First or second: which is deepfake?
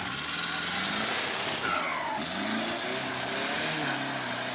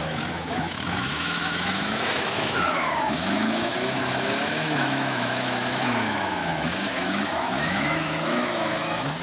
second